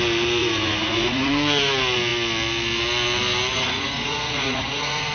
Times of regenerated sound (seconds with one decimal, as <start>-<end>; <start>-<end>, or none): 0.4-1.3; 3.5-5.1